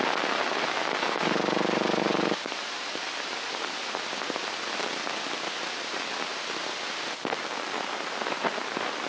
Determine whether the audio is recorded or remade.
recorded